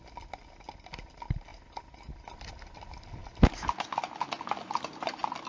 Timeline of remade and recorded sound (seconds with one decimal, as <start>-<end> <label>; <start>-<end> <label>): 0.0-5.5 recorded